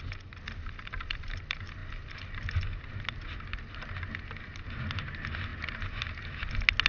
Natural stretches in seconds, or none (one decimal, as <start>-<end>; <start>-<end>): 0.0-6.9